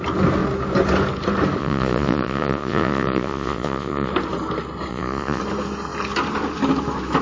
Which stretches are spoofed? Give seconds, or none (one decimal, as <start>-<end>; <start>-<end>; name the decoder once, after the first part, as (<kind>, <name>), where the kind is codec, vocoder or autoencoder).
1.6-4.1 (vocoder, Vocos); 4.9-5.4